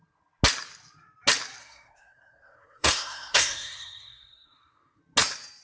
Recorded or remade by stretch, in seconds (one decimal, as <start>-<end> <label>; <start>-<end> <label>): 0.0-1.6 recorded; 1.6-5.0 remade; 5.0-5.6 recorded